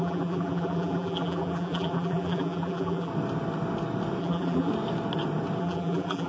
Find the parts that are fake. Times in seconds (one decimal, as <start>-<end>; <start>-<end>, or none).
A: 0.0-3.1; 4.2-4.7; 5.6-6.3